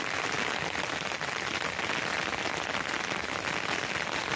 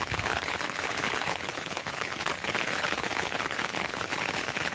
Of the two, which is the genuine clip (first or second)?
first